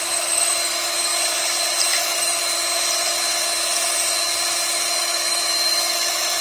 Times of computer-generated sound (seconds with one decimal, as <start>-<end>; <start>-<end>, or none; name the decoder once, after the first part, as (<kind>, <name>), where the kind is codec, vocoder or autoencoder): 0.0-1.1 (autoencoder, DAC-VAE); 2.0-2.4; 4.9-6.4